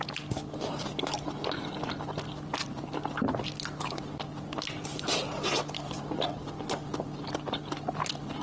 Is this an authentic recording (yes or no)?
yes